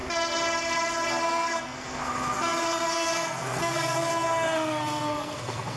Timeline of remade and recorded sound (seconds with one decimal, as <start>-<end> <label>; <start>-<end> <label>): 0.0-1.1 recorded; 1.1-5.8 remade